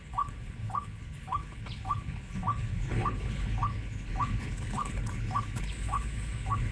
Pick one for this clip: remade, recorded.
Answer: remade